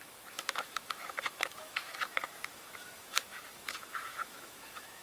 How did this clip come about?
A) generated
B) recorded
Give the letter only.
A